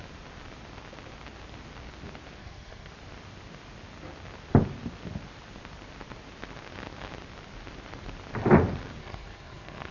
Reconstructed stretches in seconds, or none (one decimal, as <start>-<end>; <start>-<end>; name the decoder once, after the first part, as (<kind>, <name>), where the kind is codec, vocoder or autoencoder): 2.4-2.9 (codec, SNAC); 9.0-9.9